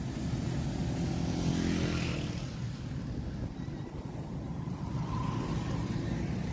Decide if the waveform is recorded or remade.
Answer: recorded